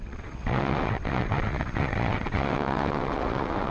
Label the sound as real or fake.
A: fake